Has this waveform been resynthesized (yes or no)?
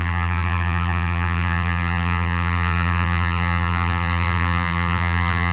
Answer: yes